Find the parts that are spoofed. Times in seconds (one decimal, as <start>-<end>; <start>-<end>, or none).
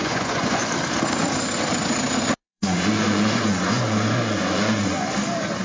0.0-0.7; 2.4-5.1